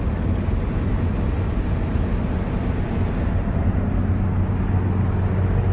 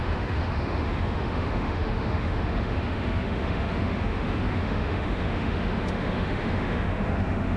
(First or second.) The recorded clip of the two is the first